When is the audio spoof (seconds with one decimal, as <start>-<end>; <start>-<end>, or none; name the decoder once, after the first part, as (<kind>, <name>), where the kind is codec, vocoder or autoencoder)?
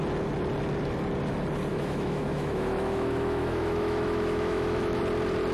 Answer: 1.7-5.0 (autoencoder, DAC-VAE)